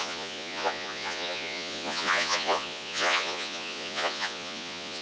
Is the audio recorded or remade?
remade